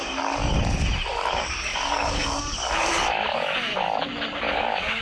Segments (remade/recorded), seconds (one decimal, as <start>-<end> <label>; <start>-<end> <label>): 0.0-0.5 remade; 0.5-1.1 recorded; 1.1-3.7 remade; 3.7-4.5 recorded; 4.5-5.0 remade